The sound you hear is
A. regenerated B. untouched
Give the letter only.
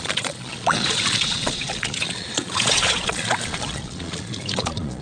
A